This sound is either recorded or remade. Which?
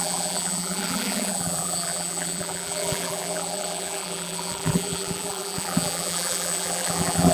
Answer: remade